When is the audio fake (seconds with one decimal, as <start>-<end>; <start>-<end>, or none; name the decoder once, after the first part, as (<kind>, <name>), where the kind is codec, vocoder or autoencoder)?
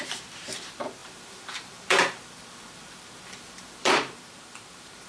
0.0-5.1 (vocoder, BigVGAN v2)